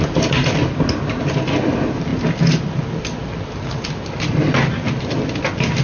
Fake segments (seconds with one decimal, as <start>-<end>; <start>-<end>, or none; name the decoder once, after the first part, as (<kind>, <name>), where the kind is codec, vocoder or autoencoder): none